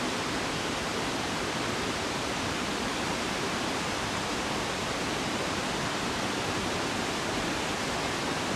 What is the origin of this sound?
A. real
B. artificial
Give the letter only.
B